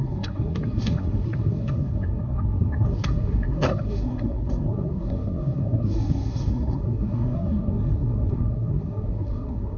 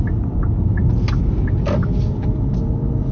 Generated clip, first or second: first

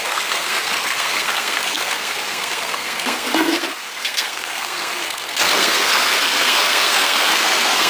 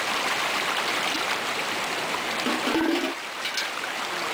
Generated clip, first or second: first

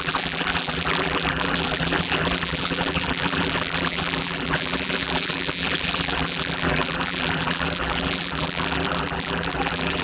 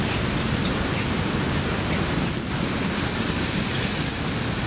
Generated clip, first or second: first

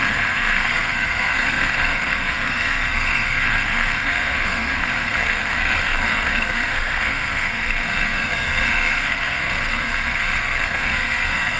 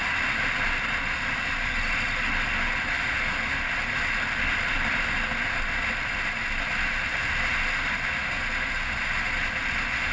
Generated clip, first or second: first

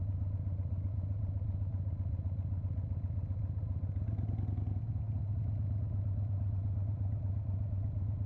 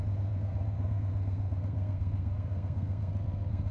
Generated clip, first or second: second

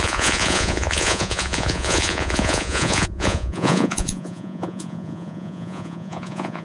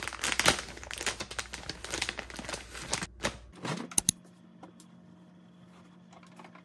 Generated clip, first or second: first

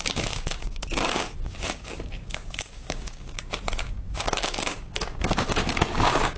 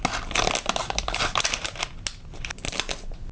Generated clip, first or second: first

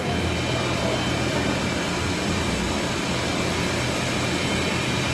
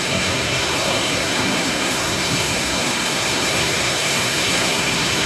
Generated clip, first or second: second